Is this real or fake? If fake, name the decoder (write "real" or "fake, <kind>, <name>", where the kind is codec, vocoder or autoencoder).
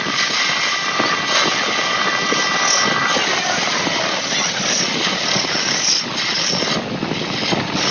real